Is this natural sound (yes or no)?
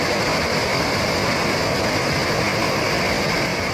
no